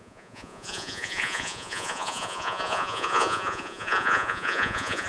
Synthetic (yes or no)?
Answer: yes